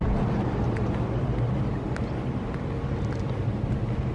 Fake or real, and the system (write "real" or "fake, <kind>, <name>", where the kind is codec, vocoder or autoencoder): real